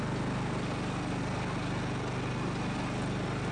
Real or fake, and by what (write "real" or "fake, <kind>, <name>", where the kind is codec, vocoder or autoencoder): real